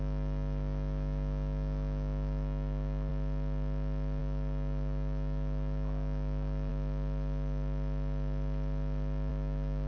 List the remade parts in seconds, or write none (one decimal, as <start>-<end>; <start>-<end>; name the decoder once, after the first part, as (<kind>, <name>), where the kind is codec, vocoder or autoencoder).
0.0-3.1 (autoencoder, DAC-VAE); 4.2-6.7; 9.3-9.9